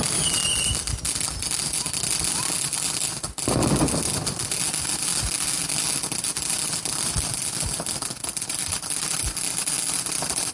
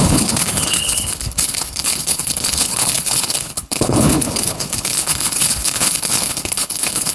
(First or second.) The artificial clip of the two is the second